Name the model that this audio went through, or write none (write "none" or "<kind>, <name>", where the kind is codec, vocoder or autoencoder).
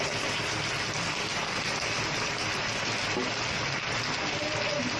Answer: none